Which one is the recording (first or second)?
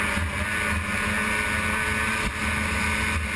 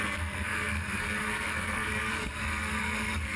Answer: first